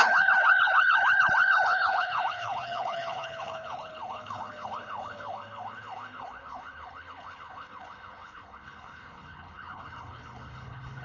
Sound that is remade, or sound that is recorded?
remade